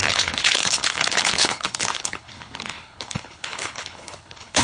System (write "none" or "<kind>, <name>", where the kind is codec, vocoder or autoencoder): codec, HILCodec